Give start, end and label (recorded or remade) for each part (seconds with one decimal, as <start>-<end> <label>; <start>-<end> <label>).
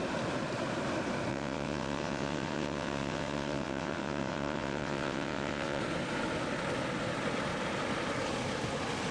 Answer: 0.0-1.3 recorded; 1.3-5.8 remade; 5.8-9.1 recorded